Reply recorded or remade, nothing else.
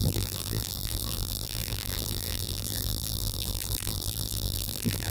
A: remade